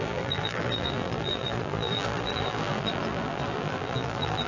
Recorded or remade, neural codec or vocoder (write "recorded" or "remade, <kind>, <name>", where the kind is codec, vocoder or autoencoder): remade, vocoder, BigVGAN v2